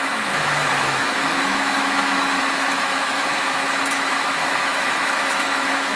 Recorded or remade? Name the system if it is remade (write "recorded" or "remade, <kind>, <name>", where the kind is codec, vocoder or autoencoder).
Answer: remade, autoencoder, DAC-VAE